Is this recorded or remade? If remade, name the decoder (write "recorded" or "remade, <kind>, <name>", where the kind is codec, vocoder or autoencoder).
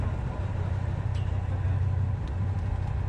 recorded